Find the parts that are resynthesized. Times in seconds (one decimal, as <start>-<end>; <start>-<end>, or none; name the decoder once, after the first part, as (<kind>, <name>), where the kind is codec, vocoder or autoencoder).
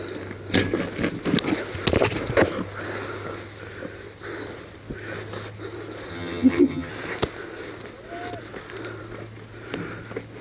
6.1-6.9 (vocoder, HiFi-GAN)